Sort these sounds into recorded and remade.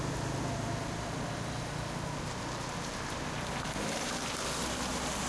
recorded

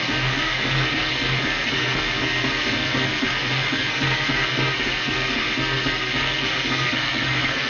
remade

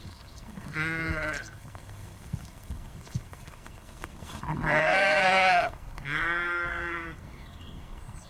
remade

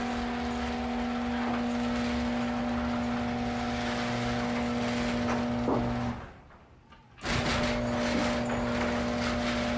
recorded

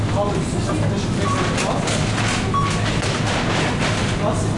recorded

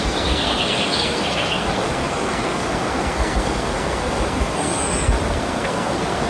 remade